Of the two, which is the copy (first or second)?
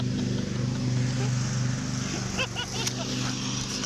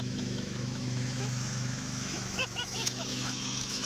second